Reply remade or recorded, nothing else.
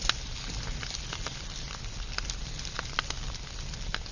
recorded